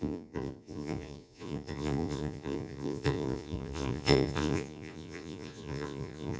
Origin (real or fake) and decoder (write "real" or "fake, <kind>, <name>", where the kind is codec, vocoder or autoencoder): fake, vocoder, Vocos